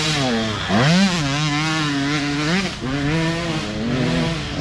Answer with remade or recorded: recorded